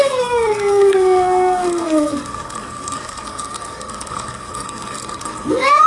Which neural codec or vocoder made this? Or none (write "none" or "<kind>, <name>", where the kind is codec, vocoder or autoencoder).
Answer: codec, SNAC